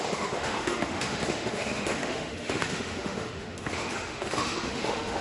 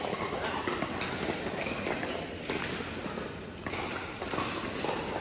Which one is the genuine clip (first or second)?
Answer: second